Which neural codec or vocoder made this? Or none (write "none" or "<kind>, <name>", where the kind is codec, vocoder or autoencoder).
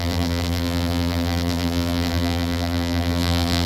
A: vocoder, BigVGAN v2